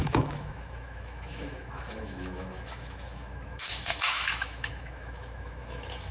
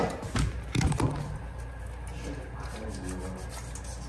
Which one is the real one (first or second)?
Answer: second